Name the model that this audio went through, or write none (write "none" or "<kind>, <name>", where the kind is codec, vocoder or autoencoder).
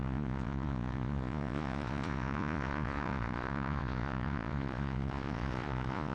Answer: vocoder, Vocos